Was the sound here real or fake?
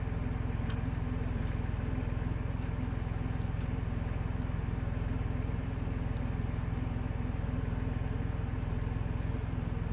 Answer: real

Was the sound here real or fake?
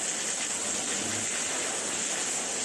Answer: real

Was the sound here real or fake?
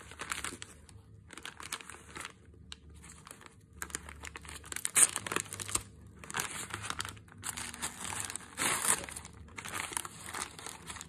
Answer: real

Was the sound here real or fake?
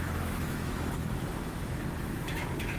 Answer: fake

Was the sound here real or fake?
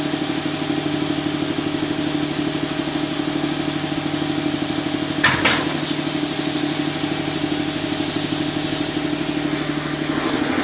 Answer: real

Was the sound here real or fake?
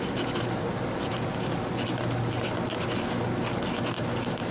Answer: real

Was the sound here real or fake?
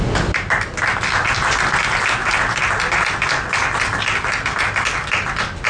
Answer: real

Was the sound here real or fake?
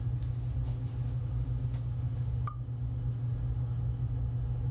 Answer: real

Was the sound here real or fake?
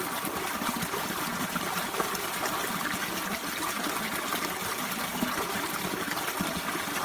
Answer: real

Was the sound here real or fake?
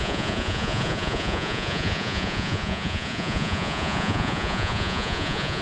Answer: fake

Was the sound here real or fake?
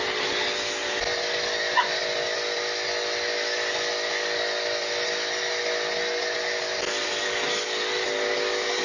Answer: real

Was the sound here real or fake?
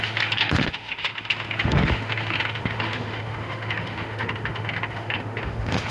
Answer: fake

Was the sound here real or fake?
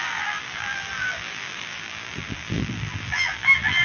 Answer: fake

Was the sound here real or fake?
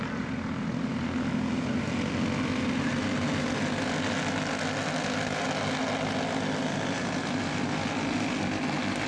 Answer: real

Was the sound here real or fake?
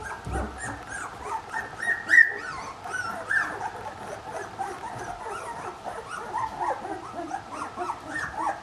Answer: real